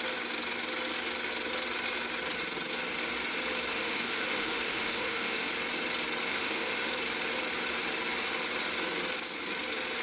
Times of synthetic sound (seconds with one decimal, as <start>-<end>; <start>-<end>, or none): 3.7-5.5; 6.3-6.9